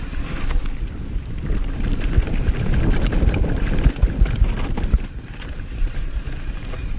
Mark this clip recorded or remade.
recorded